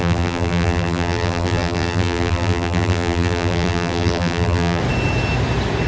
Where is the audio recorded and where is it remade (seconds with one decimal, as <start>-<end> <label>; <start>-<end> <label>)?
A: 0.0-4.8 remade; 4.8-5.9 recorded